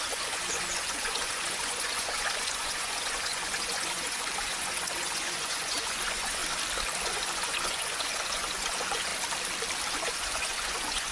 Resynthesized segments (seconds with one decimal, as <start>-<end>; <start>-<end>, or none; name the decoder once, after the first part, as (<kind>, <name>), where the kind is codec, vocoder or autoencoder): 0.0-6.4 (vocoder, Vocos); 7.0-9.1; 9.9-11.1